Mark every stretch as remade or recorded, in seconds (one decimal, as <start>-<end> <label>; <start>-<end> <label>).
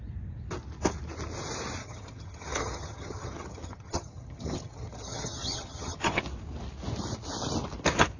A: 0.0-1.8 recorded; 1.8-6.2 remade; 6.2-8.2 recorded